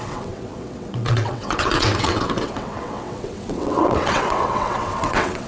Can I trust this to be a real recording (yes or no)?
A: no